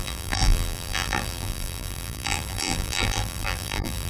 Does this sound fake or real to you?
fake